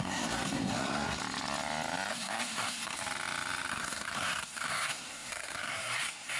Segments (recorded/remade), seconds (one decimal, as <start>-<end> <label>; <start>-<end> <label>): 0.0-1.2 remade; 1.2-2.1 recorded; 2.1-3.0 remade; 3.0-3.7 recorded; 3.7-6.4 remade